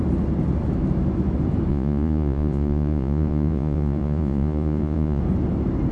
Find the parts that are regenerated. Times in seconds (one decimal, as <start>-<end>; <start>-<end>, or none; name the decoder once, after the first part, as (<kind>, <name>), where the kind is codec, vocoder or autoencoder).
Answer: 1.7-5.2 (vocoder, Vocos)